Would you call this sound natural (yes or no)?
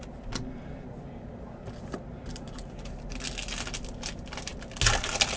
yes